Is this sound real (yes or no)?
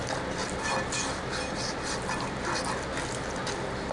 yes